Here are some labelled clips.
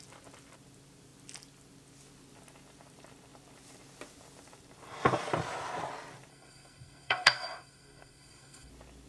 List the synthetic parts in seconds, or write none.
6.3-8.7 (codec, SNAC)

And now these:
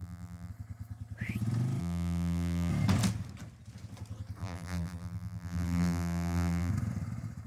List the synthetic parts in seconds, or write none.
0.0-0.5 (vocoder, BigVGAN v2); 1.8-2.7; 4.4-6.7

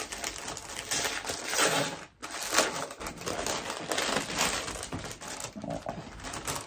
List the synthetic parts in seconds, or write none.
none

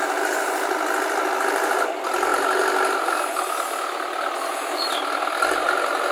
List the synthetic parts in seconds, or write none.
none

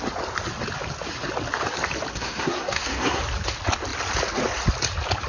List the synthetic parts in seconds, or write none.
2.1-3.2 (codec, SNAC)

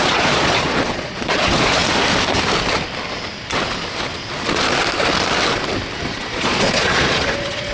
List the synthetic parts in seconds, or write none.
0.0-1.8 (vocoder, Vocos); 6.0-7.7